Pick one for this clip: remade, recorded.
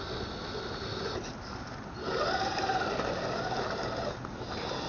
recorded